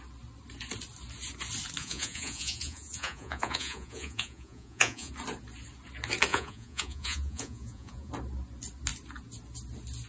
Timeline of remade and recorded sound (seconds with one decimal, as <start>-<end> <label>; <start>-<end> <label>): 0.0-1.8 recorded; 1.8-5.1 remade; 5.1-6.3 recorded; 6.3-8.1 remade; 8.1-10.1 recorded